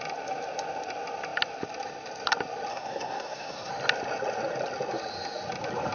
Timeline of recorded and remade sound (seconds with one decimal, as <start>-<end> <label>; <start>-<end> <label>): 0.0-2.7 recorded; 2.7-3.7 remade; 3.7-5.9 recorded